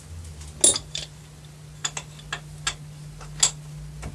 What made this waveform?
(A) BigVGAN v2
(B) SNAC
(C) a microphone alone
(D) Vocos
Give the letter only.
C